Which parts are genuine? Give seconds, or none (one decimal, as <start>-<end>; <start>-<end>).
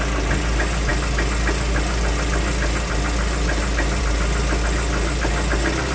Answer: 0.0-5.9